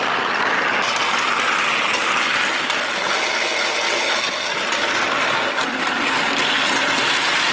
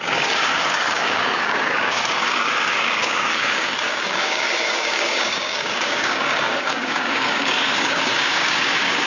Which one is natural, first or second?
first